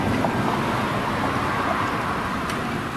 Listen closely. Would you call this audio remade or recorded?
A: recorded